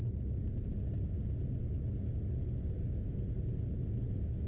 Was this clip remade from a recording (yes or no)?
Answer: no